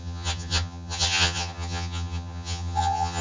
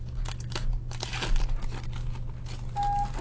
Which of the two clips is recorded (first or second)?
second